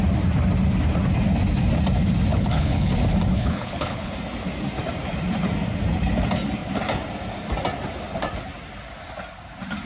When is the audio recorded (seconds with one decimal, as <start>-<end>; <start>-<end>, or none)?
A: 0.0-2.3; 2.9-3.3; 4.1-9.9

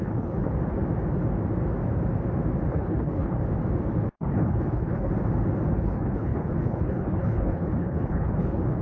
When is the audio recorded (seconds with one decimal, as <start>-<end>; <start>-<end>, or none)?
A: 0.5-2.7; 3.4-4.1; 5.1-5.7